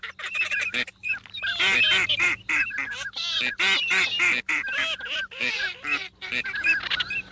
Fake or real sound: real